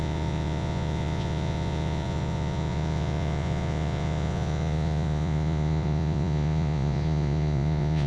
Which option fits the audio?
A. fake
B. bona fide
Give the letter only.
A